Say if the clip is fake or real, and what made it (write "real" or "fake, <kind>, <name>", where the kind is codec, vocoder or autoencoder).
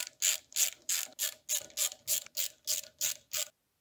real